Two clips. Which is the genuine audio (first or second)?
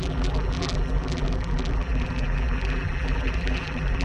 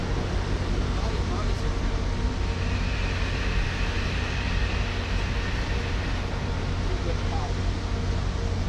second